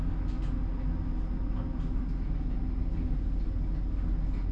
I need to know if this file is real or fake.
real